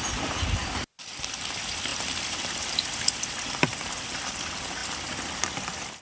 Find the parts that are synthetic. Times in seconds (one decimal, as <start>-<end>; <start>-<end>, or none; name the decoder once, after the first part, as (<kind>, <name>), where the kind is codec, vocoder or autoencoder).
1.9-3.2 (vocoder, BigVGAN v2)

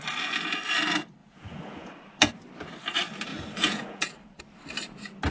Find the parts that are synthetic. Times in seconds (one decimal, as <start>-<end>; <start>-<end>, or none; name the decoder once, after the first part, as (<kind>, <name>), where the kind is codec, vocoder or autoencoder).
1.2-1.9 (vocoder, Vocos); 3.3-4.4

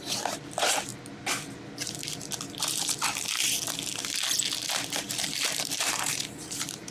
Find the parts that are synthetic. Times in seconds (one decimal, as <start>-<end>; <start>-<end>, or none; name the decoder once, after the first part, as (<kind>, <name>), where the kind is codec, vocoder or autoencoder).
0.0-0.9 (vocoder, BigVGAN v2); 2.6-3.4; 5.2-6.9

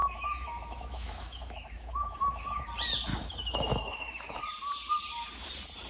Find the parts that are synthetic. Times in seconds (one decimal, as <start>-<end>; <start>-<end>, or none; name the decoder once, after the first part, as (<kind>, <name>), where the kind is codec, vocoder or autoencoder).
0.0-2.6 (autoencoder, DAC-VAE); 3.1-4.4

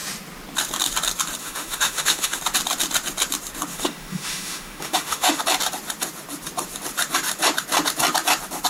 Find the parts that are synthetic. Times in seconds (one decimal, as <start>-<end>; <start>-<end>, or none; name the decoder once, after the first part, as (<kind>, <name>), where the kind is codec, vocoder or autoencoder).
1.4-2.4 (autoencoder, DAC-VAE); 3.7-5.4

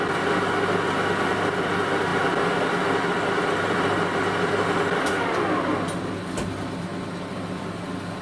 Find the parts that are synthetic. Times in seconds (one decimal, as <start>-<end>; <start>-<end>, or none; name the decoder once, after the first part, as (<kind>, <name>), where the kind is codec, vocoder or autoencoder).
none